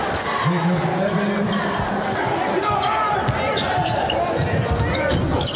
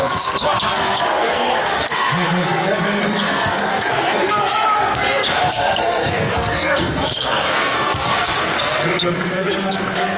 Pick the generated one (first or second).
second